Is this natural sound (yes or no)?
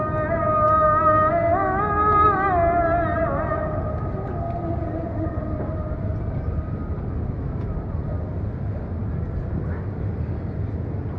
yes